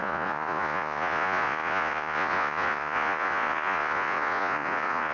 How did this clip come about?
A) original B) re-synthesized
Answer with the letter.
B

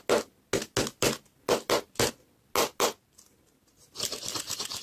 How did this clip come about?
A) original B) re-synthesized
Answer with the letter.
A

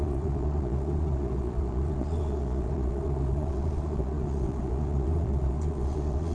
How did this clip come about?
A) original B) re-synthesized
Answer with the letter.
B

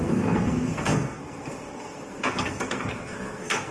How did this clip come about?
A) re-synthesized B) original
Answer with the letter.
A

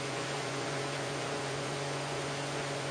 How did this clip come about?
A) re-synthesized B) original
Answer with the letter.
A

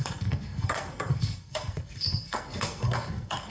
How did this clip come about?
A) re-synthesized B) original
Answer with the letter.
A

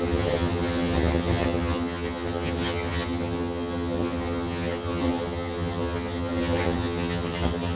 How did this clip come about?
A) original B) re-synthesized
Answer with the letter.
B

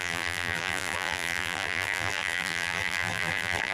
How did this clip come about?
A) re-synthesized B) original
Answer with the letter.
A